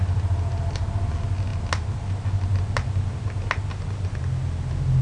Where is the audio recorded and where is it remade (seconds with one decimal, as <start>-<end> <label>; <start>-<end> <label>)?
0.0-5.0 recorded